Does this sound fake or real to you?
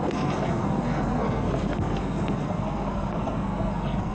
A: fake